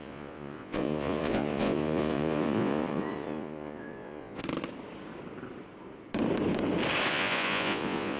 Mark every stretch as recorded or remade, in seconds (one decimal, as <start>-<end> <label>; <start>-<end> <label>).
0.0-4.4 remade; 4.4-7.1 recorded; 7.1-8.2 remade